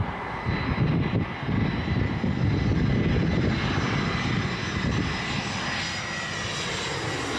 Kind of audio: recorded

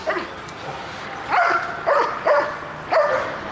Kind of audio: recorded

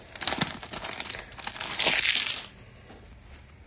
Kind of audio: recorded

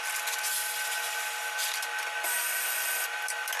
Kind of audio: recorded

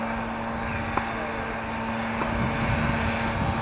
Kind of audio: recorded